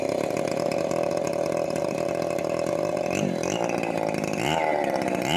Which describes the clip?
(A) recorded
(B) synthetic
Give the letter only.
A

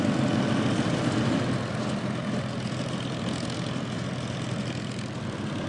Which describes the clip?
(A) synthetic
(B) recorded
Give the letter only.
B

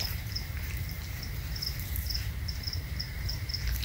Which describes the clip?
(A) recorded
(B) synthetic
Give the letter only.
B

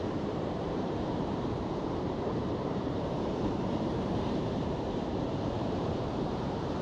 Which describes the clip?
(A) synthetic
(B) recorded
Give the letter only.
A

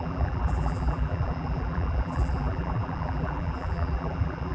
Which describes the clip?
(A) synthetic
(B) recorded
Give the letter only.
A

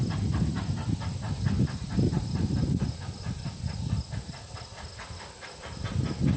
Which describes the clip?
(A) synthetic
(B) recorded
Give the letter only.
B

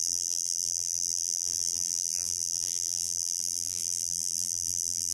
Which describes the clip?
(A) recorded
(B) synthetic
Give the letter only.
B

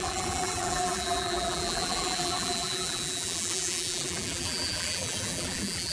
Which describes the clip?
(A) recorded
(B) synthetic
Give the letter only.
B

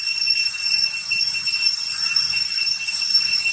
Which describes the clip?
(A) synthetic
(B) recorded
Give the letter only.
B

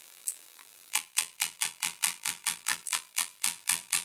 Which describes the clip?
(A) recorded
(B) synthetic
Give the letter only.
B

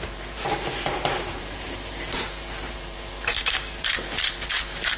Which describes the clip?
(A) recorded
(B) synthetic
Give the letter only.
B